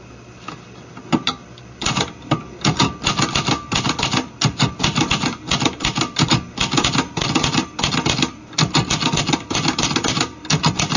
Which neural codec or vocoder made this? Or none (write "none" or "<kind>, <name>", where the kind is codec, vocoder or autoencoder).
none